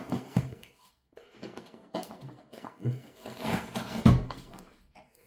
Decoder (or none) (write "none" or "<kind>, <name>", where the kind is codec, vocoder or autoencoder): codec, SNAC